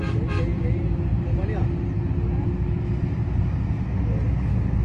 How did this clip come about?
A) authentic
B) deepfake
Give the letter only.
A